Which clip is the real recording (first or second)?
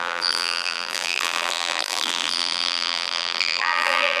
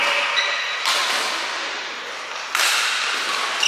second